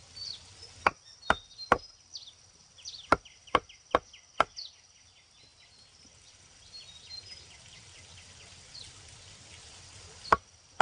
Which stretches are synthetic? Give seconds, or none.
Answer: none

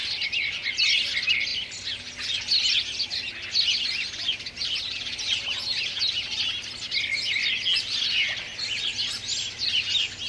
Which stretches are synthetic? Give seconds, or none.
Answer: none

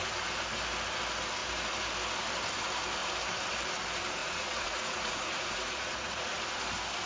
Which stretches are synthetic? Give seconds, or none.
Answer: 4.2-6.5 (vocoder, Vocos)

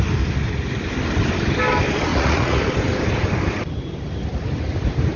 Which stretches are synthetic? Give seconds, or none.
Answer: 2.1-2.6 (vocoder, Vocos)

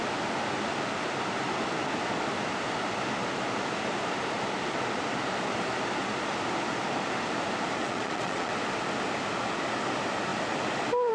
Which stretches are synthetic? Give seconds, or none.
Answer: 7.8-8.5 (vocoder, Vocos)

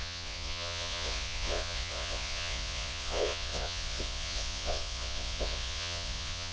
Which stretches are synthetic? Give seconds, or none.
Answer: 0.0-6.5 (vocoder, Vocos)

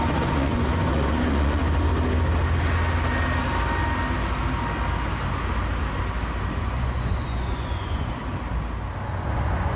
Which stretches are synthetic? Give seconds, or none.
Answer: 0.0-1.6 (vocoder, Vocos); 6.6-8.2; 9.2-9.8

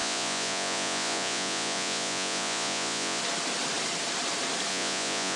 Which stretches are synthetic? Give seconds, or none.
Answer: 0.0-3.2 (vocoder, Vocos); 4.7-5.4